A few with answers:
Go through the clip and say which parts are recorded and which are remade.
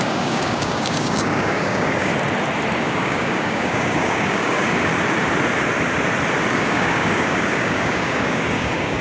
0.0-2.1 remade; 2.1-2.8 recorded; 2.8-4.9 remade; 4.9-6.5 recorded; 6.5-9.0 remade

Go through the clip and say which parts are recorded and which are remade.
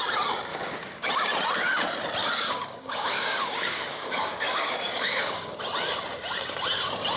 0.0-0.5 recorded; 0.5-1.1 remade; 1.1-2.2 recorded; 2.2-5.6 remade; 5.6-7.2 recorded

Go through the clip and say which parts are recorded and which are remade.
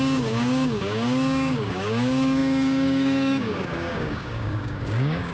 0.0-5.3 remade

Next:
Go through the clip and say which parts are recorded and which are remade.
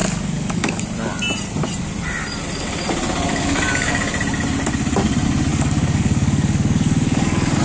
0.0-0.8 remade; 0.8-3.3 recorded; 3.3-4.0 remade; 4.0-5.5 recorded; 5.5-7.6 remade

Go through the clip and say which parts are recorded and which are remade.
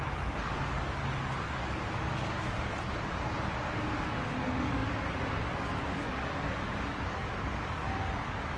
0.0-2.7 remade; 2.7-3.6 recorded; 3.6-8.6 remade